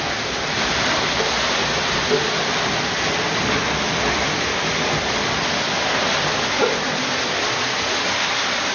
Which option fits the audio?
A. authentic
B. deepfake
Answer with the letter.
A